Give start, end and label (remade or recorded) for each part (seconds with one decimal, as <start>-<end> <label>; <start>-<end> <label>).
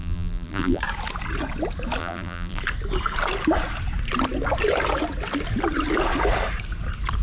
0.0-0.8 remade; 0.8-2.0 recorded; 2.0-2.6 remade; 2.6-7.2 recorded